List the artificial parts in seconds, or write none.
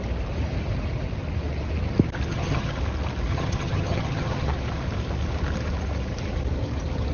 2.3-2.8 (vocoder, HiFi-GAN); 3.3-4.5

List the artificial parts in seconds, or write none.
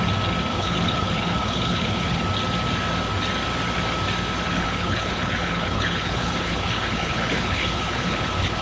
0.5-2.2 (codec, HILCodec); 4.5-8.6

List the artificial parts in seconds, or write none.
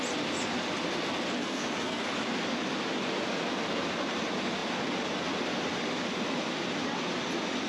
1.4-2.0 (codec, SNAC)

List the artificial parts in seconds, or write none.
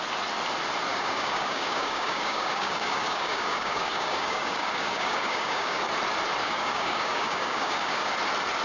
0.9-5.8 (codec, DAC); 6.4-8.1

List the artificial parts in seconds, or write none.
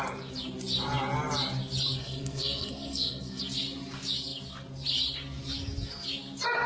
2.0-3.4 (codec, SNAC)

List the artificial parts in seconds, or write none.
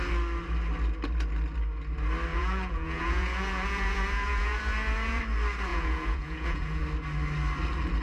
2.3-5.2 (vocoder, Vocos); 5.7-6.8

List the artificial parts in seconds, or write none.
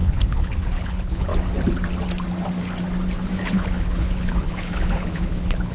0.0-1.3 (codec, HILCodec); 3.4-5.7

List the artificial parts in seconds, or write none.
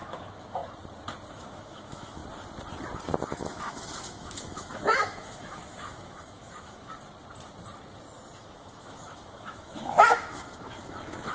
0.0-0.6 (autoencoder, DAC-VAE); 1.3-2.2; 3.3-6.9; 8.4-11.3